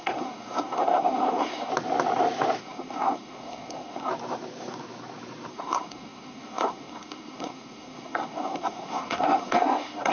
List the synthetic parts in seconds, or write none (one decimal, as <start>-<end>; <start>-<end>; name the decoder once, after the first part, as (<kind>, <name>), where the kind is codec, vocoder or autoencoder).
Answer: 0.0-1.7 (codec, SNAC); 2.6-4.1; 5.5-10.1